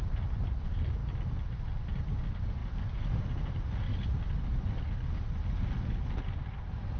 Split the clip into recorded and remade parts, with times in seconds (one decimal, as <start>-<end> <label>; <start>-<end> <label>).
0.0-7.0 recorded